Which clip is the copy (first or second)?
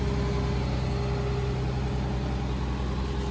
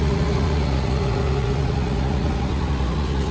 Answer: second